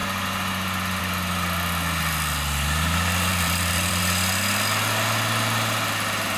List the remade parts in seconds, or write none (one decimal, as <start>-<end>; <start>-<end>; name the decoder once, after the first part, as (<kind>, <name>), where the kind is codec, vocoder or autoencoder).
3.3-4.0 (vocoder, BigVGAN v2)